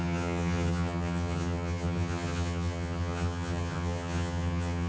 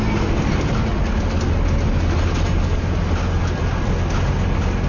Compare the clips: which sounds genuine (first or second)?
second